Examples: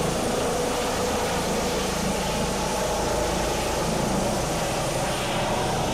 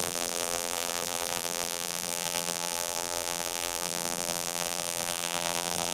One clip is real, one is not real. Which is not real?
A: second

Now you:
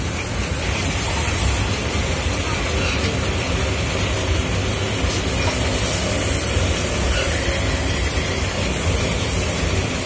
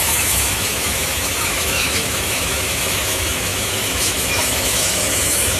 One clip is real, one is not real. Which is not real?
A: second